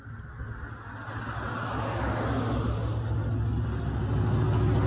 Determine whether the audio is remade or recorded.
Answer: recorded